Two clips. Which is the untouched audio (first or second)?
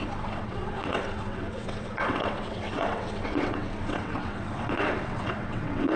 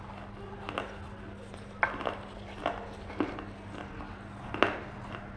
second